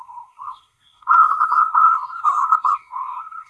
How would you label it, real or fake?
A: fake